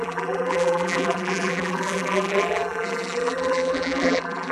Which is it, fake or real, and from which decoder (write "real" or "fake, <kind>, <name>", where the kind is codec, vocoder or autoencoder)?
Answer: fake, vocoder, BigVGAN v2